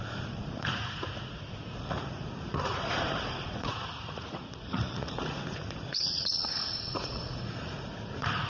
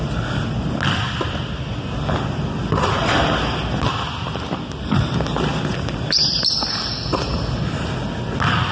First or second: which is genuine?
second